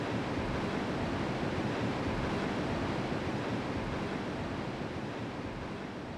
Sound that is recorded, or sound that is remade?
recorded